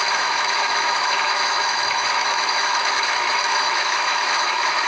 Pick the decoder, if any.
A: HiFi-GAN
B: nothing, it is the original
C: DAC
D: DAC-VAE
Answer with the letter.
D